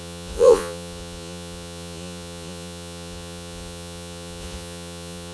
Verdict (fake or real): fake